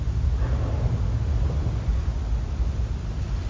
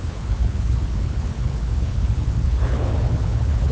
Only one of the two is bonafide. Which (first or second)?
first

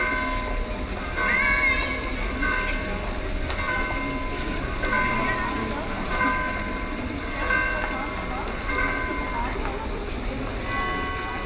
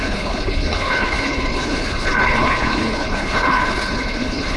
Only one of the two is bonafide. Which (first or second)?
first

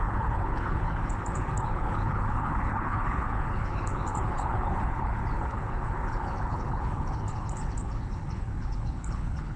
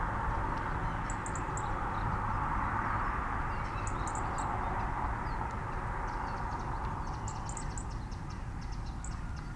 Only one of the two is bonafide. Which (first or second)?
second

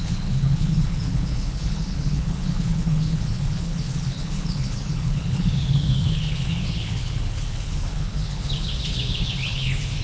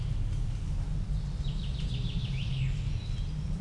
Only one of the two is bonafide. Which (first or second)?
second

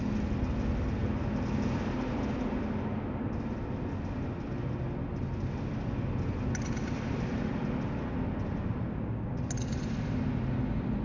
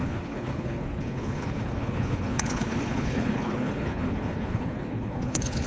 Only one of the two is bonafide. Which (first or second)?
first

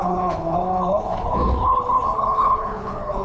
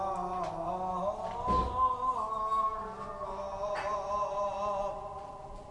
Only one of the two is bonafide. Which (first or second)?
second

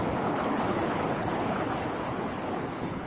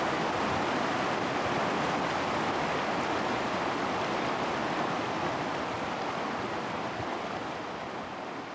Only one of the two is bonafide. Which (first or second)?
second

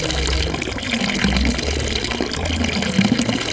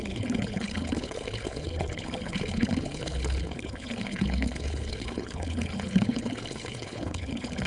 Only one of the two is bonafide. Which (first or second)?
first